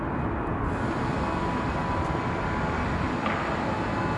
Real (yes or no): yes